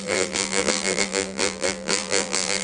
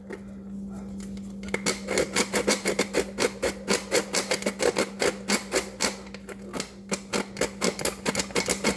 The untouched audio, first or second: second